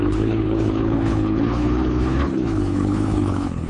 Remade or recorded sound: remade